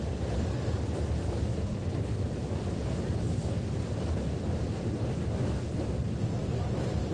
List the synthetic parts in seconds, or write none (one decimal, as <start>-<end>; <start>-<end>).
1.7-2.2

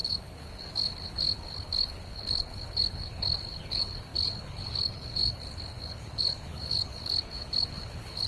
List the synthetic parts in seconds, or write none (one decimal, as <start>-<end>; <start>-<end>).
0.0-8.3

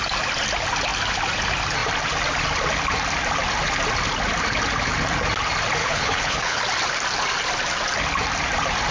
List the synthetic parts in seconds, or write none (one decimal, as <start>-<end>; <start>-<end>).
5.8-6.6

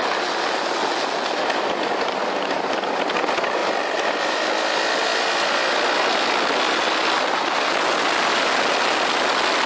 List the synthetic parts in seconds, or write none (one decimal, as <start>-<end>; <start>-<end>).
none

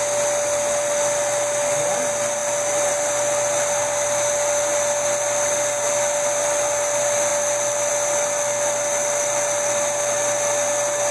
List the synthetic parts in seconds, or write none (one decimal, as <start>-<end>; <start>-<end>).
none

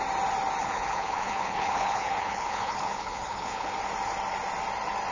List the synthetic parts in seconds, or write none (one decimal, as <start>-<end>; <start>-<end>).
0.6-3.7

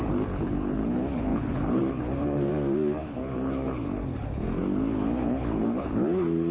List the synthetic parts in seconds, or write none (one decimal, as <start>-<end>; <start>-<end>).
0.0-2.5; 3.0-6.5

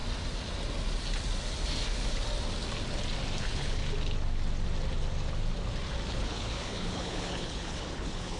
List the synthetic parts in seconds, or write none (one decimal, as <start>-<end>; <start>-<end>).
3.4-3.8; 6.1-8.4